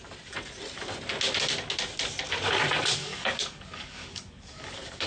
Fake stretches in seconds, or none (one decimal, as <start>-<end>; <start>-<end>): 3.0-5.1